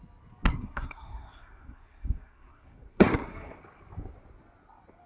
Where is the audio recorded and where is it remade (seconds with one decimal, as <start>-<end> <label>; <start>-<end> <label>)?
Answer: 0.0-0.5 recorded; 0.5-3.6 remade; 3.6-5.1 recorded